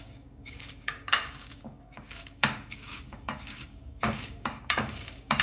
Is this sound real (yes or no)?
no